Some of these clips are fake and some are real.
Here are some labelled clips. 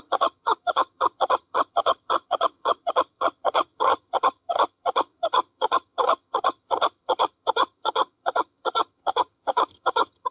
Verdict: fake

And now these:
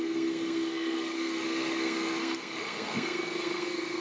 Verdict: fake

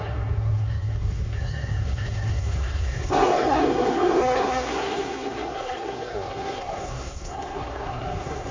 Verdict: fake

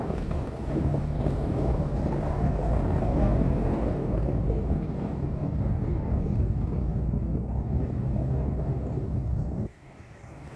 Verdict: fake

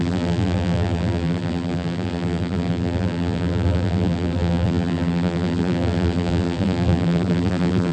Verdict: fake